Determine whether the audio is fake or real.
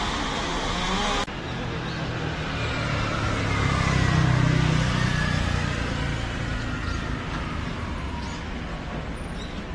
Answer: real